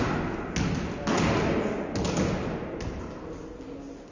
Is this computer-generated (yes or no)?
no